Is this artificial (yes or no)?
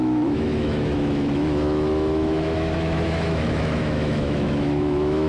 yes